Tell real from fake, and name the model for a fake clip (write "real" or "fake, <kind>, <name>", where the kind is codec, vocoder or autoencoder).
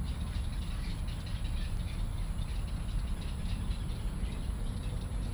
real